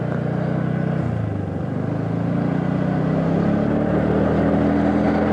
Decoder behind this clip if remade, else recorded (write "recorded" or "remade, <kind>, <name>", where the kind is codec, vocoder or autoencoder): recorded